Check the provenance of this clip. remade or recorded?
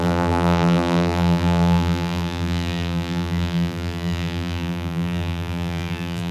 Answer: remade